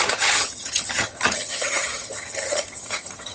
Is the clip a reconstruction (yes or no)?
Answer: yes